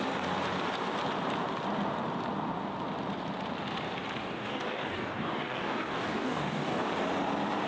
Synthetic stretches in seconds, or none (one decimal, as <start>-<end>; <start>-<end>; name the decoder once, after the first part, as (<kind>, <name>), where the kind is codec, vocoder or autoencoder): 4.2-6.9 (codec, DAC)